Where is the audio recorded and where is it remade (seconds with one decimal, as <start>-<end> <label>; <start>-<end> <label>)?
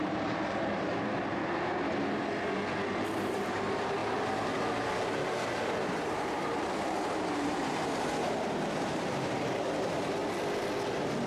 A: 0.0-1.4 remade; 1.4-2.9 recorded; 2.9-10.2 remade; 10.2-10.9 recorded; 10.9-11.3 remade